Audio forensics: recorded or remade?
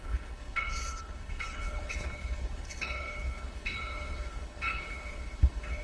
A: remade